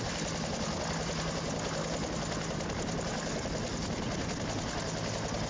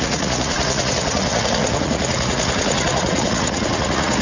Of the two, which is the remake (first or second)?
second